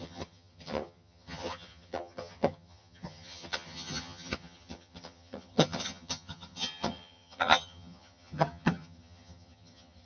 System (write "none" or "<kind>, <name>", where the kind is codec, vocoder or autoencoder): vocoder, HiFi-GAN